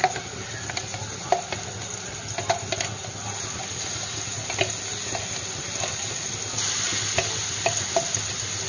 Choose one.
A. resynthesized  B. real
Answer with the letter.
B